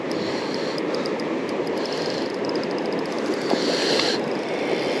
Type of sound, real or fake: real